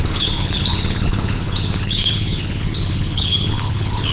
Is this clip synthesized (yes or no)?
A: yes